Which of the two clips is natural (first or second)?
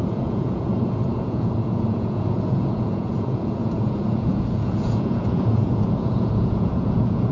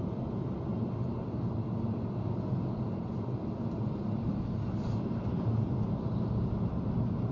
second